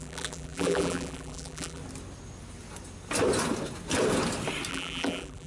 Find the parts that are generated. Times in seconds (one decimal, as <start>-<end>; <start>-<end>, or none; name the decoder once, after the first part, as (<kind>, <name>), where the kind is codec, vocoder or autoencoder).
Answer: 0.0-1.8 (vocoder, BigVGAN v2); 4.7-5.5